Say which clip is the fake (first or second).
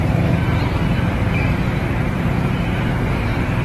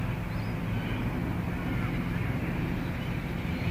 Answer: first